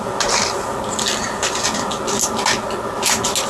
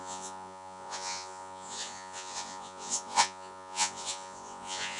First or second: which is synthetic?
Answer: second